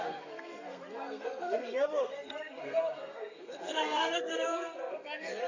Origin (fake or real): fake